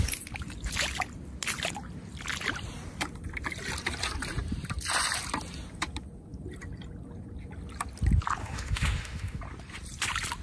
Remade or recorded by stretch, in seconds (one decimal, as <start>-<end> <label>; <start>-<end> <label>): 0.0-8.4 recorded; 8.4-9.4 remade; 9.4-10.4 recorded